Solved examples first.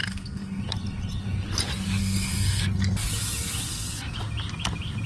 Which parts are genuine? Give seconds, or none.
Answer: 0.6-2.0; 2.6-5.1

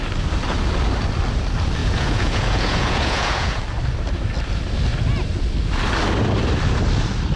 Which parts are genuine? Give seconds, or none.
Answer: 0.0-1.8; 3.6-7.4

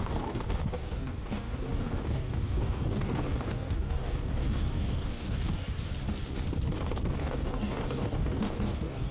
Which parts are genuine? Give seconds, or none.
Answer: 5.9-7.2

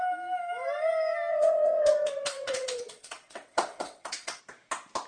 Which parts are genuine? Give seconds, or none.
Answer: 0.0-1.3; 4.4-5.1